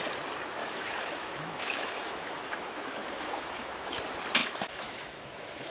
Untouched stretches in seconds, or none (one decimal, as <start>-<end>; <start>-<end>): 0.0-0.6; 4.0-4.4